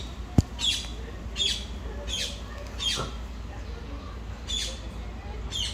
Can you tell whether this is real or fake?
real